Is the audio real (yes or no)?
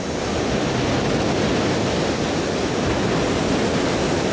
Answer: yes